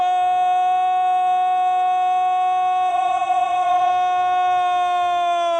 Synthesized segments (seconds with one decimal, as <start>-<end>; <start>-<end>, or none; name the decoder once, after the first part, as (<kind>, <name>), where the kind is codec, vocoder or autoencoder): 2.9-3.9 (vocoder, Vocos)